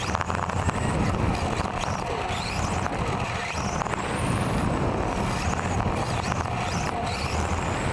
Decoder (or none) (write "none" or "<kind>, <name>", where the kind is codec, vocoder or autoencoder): none